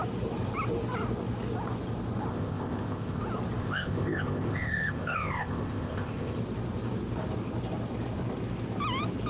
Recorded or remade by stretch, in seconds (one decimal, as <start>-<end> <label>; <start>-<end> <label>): 0.0-2.3 recorded; 2.3-3.2 remade; 3.2-3.6 recorded; 3.6-6.4 remade; 6.4-9.3 recorded

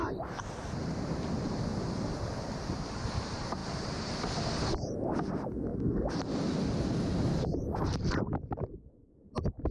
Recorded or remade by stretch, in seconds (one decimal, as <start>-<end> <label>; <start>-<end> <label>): 0.0-1.7 remade; 1.7-2.6 recorded; 2.6-5.7 remade; 5.7-7.2 recorded; 7.2-9.7 remade

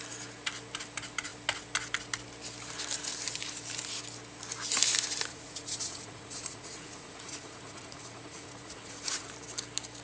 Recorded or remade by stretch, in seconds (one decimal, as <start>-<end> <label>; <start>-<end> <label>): 0.0-5.3 recorded; 5.3-9.3 remade; 9.3-10.0 recorded

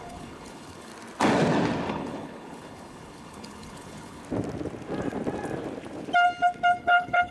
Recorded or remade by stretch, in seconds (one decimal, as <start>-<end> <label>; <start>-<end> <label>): 0.0-0.9 remade; 0.9-1.9 recorded; 1.9-4.2 remade; 4.2-6.8 recorded; 6.8-7.3 remade

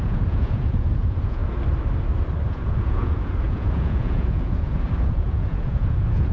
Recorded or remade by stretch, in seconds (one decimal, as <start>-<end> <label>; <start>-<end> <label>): 0.0-1.4 remade; 1.4-2.5 recorded; 2.5-6.3 remade

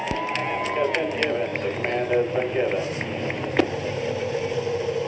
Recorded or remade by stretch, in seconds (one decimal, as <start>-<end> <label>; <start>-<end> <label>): 0.0-0.4 recorded; 0.4-1.1 remade; 1.1-5.1 recorded